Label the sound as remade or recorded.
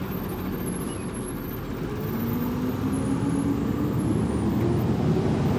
recorded